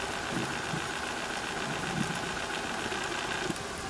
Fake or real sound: real